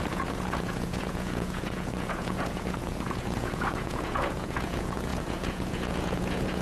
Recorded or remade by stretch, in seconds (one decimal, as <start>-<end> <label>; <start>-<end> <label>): 0.0-6.6 remade